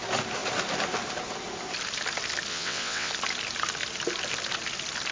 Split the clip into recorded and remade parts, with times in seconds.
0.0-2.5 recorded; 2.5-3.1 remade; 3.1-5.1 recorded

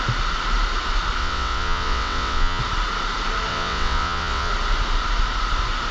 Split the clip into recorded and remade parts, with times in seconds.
0.0-1.2 recorded; 1.2-2.6 remade; 2.6-3.5 recorded; 3.5-4.5 remade; 4.5-5.9 recorded

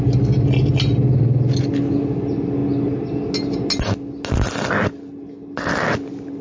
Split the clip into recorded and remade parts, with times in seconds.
0.0-6.4 recorded